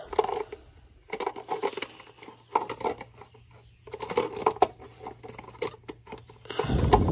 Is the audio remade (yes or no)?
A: no